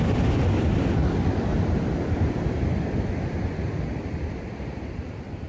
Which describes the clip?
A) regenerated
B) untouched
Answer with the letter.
A